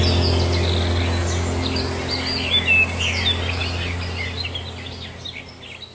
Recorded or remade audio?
recorded